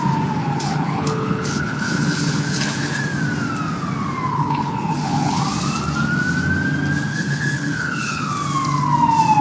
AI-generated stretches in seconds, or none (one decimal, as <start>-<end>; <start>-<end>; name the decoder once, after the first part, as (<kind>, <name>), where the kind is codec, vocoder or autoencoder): 0.4-3.0 (codec, HILCodec); 4.3-5.4; 7.1-8.3